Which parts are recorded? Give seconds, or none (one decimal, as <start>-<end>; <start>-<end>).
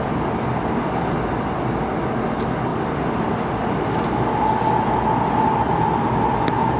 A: 0.0-2.7; 3.7-6.8